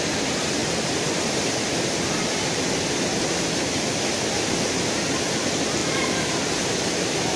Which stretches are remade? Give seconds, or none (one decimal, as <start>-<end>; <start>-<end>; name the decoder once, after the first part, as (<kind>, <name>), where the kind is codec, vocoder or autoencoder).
5.8-6.4 (vocoder, BigVGAN v2)